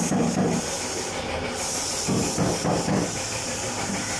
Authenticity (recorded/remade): recorded